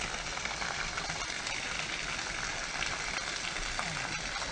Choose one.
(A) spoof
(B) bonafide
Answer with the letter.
B